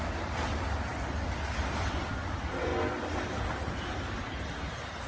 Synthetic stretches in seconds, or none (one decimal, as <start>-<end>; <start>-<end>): none